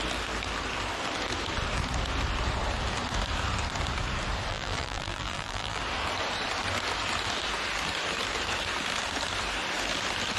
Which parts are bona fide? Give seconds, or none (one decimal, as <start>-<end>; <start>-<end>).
0.0-4.5; 5.8-10.4